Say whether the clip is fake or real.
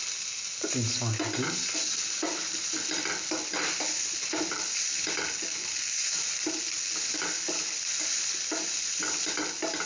real